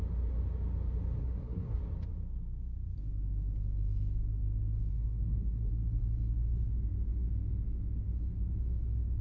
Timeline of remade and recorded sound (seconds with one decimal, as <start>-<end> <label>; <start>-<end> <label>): 0.0-1.2 recorded; 1.2-1.8 remade; 1.8-4.9 recorded; 4.9-5.7 remade; 5.7-9.2 recorded

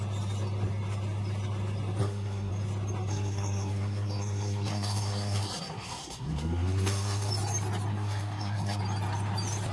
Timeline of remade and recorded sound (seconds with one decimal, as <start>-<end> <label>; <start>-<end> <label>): 0.0-2.0 recorded; 2.0-2.5 remade; 2.5-3.1 recorded; 3.1-7.3 remade; 7.3-7.9 recorded; 7.9-8.8 remade; 8.8-9.7 recorded

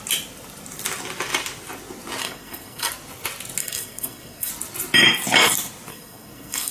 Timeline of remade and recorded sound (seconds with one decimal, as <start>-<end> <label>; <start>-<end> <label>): 0.0-2.2 recorded; 2.2-2.9 remade; 2.9-3.6 recorded; 3.6-4.5 remade; 4.5-5.9 recorded; 5.9-6.7 remade